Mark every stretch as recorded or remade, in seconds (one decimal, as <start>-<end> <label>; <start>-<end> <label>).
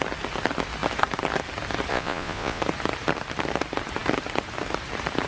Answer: 0.0-1.9 recorded; 1.9-2.6 remade; 2.6-5.3 recorded